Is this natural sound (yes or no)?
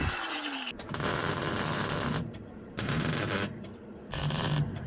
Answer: no